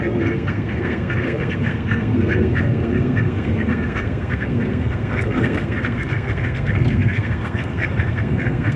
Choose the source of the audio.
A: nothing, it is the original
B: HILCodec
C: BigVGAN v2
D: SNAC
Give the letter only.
D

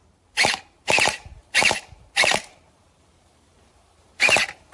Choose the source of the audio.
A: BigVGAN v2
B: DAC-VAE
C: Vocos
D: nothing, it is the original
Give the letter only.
A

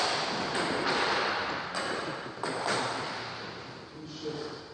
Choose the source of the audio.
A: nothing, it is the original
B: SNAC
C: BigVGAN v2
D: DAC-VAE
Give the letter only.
A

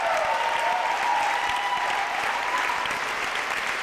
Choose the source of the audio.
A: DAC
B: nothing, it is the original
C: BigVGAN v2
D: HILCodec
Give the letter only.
B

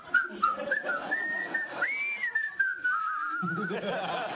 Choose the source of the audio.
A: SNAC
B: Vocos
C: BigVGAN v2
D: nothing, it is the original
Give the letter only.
D